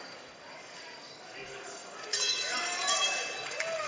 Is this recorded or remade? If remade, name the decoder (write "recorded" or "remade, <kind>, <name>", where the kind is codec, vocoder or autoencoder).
remade, codec, DAC